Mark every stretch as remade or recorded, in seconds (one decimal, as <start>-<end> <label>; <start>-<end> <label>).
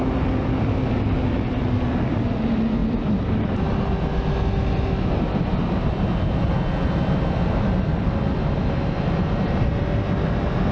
0.0-2.8 recorded; 2.8-3.6 remade; 3.6-10.7 recorded